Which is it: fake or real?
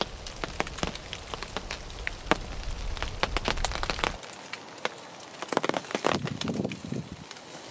real